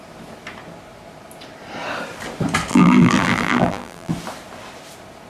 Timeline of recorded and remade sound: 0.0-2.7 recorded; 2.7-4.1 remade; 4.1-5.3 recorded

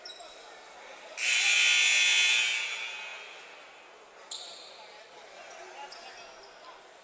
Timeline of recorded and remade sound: 0.0-7.0 recorded

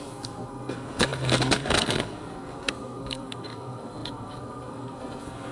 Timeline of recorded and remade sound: 0.0-5.5 remade